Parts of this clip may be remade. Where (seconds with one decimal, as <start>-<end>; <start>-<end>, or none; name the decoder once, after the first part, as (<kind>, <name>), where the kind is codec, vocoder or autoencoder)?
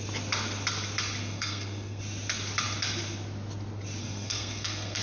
1.2-2.0 (codec, SNAC); 4.0-5.0